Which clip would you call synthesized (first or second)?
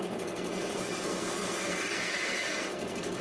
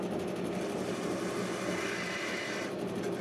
first